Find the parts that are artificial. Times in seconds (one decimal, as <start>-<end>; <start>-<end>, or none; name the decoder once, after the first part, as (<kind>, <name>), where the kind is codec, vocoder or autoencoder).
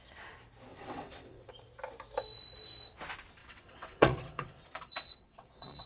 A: 0.7-1.5 (vocoder, WaveNeXt); 3.4-5.9